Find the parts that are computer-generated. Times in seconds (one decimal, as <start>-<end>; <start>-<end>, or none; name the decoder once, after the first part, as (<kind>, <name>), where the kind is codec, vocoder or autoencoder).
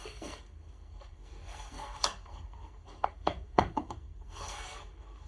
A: 0.0-5.3 (codec, SNAC)